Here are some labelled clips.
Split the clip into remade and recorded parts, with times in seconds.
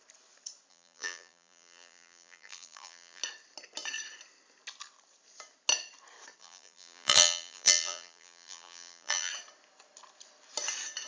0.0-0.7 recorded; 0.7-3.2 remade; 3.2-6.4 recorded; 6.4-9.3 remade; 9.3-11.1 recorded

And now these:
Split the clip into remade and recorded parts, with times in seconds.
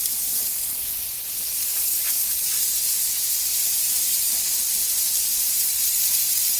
0.0-3.6 recorded; 3.6-4.3 remade; 4.3-6.6 recorded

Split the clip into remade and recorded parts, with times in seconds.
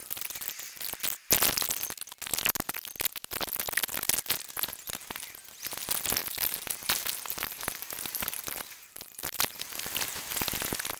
0.0-6.2 recorded; 6.2-9.6 remade; 9.6-11.0 recorded